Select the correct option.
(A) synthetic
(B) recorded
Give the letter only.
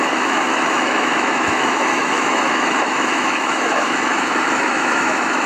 A